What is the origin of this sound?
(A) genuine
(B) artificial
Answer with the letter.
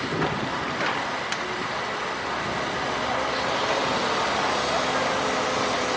A